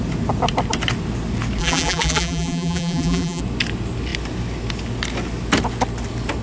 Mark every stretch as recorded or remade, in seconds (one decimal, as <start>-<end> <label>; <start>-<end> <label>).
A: 0.0-1.6 recorded; 1.6-3.4 remade; 3.4-6.4 recorded